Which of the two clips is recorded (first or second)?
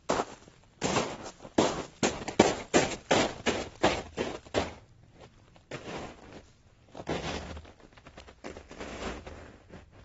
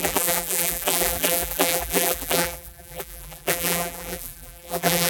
first